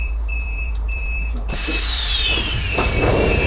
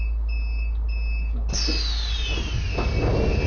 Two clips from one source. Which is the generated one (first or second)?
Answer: first